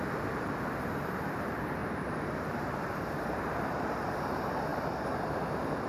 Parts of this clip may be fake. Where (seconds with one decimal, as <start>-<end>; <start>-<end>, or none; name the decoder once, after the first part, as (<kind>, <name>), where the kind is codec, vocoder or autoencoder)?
0.0-5.9 (vocoder, BigVGAN v2)